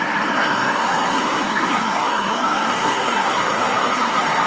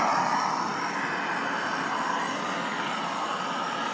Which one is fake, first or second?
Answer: first